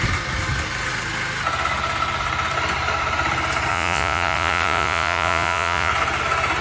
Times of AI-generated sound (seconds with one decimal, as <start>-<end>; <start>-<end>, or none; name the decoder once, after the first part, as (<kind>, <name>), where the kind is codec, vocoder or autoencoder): 3.7-5.9 (vocoder, Vocos)